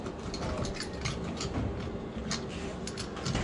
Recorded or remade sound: recorded